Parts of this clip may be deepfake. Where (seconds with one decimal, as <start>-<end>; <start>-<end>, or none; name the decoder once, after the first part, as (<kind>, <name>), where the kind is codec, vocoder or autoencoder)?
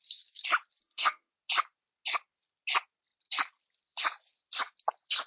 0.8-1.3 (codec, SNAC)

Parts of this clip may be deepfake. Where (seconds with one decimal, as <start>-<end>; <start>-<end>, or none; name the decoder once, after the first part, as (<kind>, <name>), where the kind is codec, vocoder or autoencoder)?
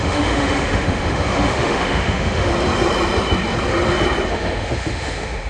0.0-2.5 (autoencoder, DAC-VAE); 4.3-5.5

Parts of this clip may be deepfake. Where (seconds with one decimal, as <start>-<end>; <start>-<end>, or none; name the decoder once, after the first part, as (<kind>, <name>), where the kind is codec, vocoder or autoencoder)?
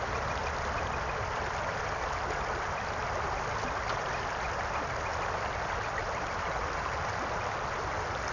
none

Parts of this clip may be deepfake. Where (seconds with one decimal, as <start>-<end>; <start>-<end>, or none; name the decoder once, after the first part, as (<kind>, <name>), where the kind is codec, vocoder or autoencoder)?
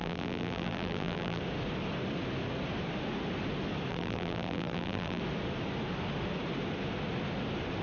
0.0-1.4 (vocoder, BigVGAN v2); 3.9-5.2